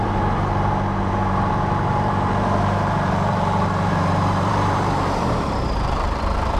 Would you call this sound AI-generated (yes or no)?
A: yes